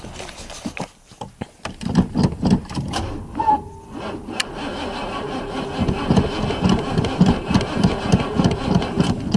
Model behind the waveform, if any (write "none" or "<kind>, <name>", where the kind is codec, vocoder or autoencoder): none